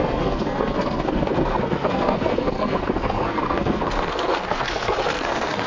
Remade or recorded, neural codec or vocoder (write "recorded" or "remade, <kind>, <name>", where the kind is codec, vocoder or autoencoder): remade, codec, SNAC